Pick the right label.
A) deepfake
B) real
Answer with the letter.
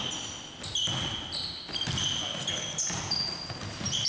B